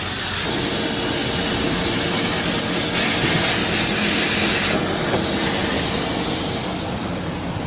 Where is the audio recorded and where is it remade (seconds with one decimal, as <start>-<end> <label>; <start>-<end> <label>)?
0.0-7.7 recorded